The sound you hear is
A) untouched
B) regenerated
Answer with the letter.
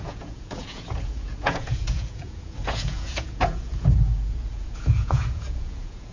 B